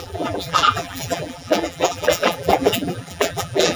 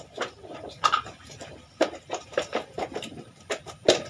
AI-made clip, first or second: first